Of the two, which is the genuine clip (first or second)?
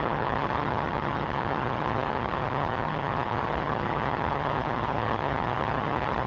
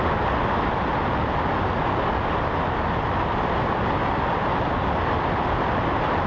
second